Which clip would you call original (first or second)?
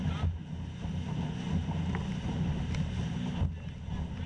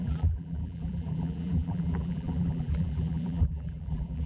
first